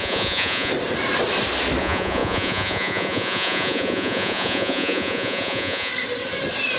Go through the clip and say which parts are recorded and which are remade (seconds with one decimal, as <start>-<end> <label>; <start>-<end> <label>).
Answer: 0.0-0.7 remade; 0.7-1.8 recorded; 1.8-5.9 remade; 5.9-6.8 recorded